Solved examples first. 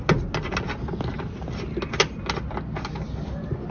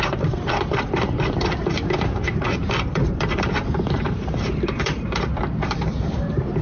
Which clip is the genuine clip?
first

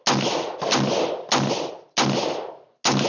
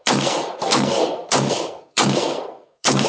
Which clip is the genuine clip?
first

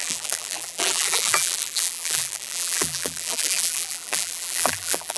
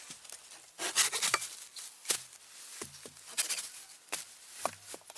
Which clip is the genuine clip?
second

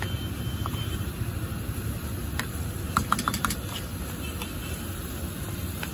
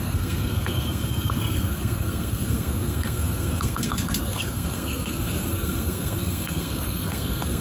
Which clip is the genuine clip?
first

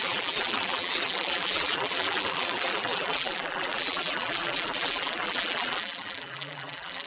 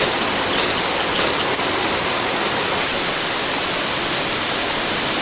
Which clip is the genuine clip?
second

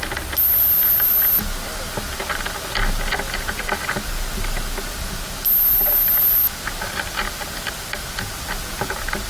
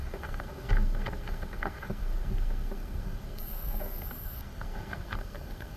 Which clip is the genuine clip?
first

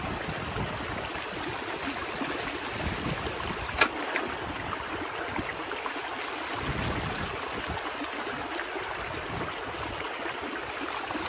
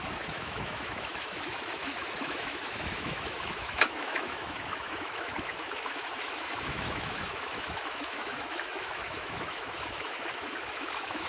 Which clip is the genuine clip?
first